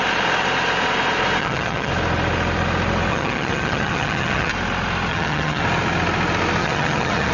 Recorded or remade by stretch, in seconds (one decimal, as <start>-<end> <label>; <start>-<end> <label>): 0.0-1.4 recorded; 1.4-1.9 remade; 1.9-3.1 recorded; 3.1-4.5 remade; 4.5-5.1 recorded; 5.1-5.6 remade; 5.6-6.6 recorded; 6.6-7.3 remade